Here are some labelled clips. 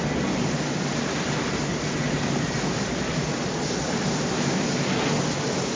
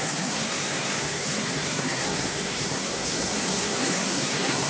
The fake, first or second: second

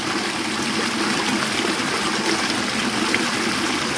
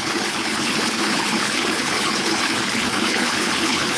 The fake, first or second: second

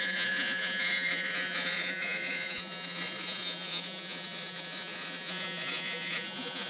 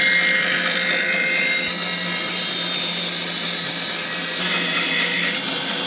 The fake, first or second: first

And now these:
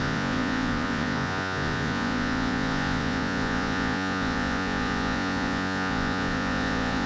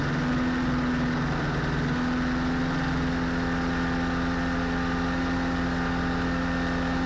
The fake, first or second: first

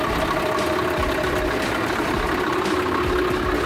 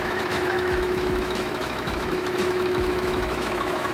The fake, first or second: second